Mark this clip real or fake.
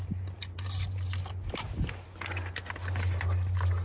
real